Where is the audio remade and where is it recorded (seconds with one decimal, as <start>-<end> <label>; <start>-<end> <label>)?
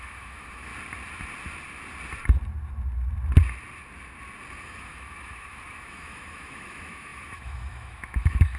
0.0-0.7 remade; 0.7-4.6 recorded; 4.6-8.6 remade